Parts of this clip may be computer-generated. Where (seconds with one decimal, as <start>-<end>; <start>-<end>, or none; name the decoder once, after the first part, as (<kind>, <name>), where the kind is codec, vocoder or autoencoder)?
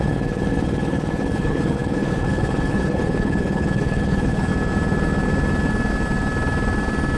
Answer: 0.0-4.5 (codec, HILCodec)